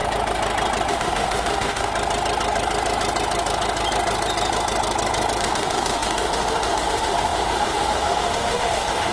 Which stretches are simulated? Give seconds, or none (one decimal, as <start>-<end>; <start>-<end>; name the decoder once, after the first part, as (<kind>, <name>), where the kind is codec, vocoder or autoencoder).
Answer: 0.9-1.9 (autoencoder, DAC-VAE); 5.4-9.1